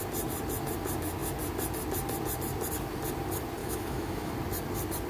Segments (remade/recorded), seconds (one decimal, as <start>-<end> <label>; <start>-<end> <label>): 0.0-3.6 recorded; 3.6-4.3 remade; 4.3-5.1 recorded